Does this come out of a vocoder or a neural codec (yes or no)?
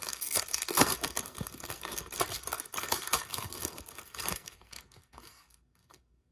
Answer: yes